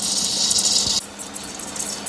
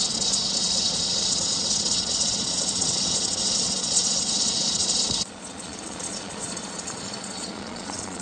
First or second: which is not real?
second